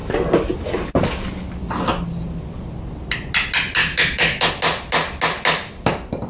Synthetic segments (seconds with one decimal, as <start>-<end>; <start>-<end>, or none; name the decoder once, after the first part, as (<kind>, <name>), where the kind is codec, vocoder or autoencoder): 3.8-4.5 (autoencoder, DAC-VAE)